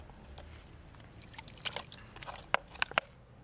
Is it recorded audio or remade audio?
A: recorded